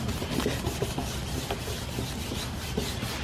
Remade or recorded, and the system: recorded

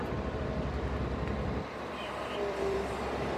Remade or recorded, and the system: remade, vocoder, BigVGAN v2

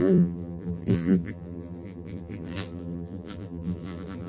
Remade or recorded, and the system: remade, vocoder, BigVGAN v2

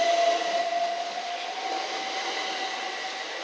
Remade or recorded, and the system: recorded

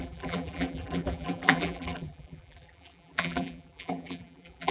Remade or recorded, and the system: remade, vocoder, BigVGAN v2